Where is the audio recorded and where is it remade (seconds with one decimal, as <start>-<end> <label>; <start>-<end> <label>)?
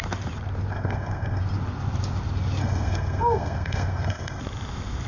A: 0.0-0.7 recorded; 0.7-1.4 remade; 1.4-2.6 recorded; 2.6-4.4 remade; 4.4-5.1 recorded